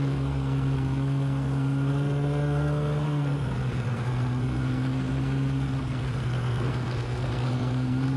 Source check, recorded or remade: remade